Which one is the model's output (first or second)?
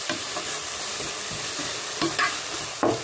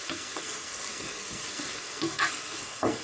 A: second